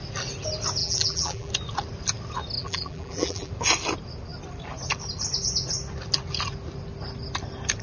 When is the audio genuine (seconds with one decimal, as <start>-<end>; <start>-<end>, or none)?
0.0-0.8; 1.5-2.6; 3.5-7.8